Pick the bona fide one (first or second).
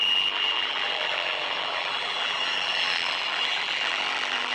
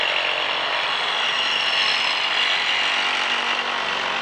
second